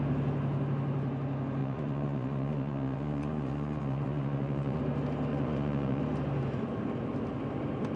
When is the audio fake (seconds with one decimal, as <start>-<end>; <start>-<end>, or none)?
1.6-4.8; 5.3-6.0